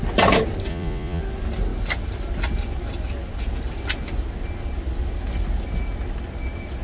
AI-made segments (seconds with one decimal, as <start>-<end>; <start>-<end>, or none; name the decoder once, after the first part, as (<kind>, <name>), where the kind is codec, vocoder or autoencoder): 0.7-1.2 (vocoder, Vocos)